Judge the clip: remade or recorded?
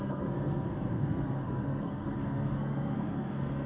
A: remade